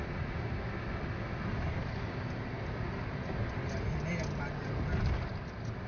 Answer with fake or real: real